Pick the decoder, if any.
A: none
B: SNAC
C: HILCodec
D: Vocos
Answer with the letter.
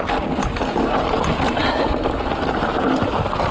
A